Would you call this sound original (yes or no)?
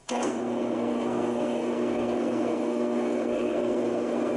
no